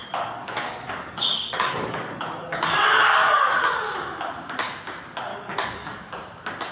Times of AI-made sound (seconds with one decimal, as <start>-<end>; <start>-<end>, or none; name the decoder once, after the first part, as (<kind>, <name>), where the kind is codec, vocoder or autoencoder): 0.0-3.5 (codec, DAC); 5.3-6.1